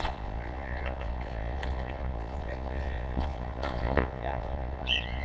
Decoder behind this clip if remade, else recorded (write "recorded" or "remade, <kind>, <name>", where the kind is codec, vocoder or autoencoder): remade, vocoder, Vocos